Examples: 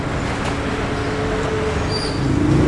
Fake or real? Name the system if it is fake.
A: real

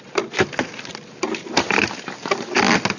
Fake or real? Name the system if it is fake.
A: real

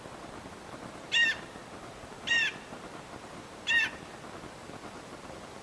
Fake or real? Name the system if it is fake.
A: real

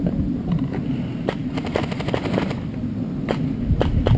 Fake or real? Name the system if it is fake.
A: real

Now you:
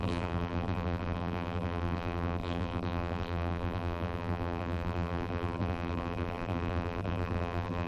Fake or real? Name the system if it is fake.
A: fake, vocoder, BigVGAN v2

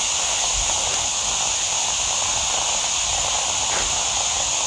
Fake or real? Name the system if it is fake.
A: real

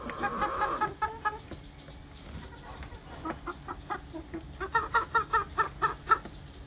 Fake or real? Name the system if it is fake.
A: real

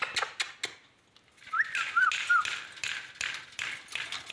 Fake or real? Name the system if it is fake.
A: real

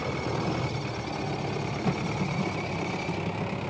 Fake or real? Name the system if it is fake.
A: real